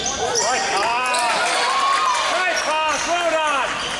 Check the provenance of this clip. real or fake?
real